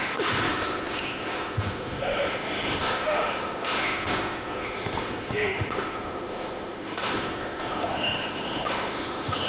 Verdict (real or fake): fake